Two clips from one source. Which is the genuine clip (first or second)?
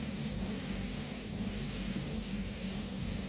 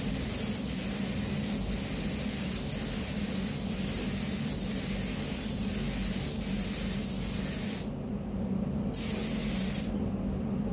second